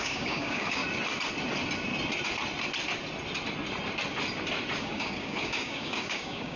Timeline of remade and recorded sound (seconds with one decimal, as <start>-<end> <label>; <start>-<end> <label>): 0.0-0.8 remade; 0.8-4.8 recorded; 4.8-6.6 remade